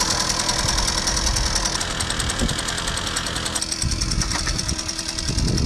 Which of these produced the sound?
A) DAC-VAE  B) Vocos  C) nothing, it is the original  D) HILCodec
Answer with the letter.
C